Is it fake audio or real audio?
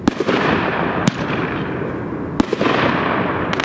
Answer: real